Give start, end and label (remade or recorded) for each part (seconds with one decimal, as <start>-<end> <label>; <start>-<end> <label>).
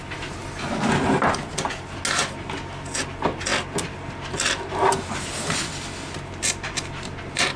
0.0-7.6 recorded